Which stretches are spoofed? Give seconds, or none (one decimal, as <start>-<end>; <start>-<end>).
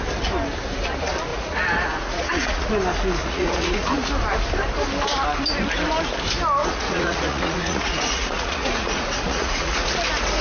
1.3-2.7; 3.2-4.1; 6.6-9.9